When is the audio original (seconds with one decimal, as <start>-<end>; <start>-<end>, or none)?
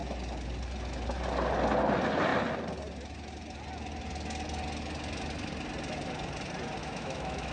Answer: 0.0-6.8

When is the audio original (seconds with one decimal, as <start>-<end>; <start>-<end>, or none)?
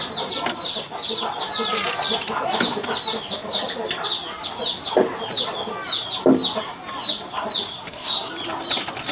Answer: 0.0-7.7; 8.3-9.1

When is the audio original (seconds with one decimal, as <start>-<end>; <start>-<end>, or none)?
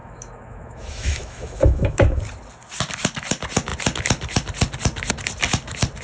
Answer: 2.2-6.0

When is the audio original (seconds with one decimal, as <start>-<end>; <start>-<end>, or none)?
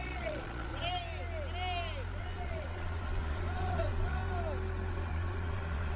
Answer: 0.7-2.2; 4.2-4.9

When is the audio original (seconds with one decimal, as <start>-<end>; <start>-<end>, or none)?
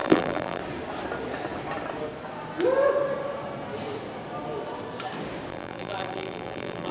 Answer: 0.6-5.5